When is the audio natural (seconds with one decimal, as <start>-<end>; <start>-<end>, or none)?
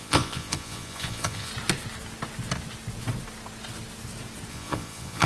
1.5-4.5